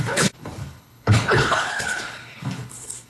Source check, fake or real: fake